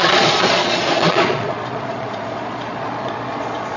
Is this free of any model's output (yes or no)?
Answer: no